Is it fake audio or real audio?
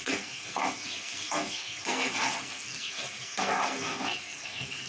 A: fake